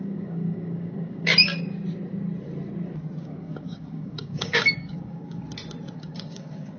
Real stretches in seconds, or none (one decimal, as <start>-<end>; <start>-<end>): 1.5-3.2; 5.4-5.9